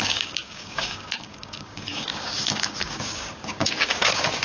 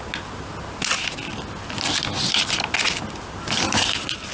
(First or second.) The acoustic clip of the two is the second